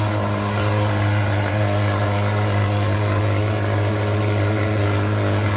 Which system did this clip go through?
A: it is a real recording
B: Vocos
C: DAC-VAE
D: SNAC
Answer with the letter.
A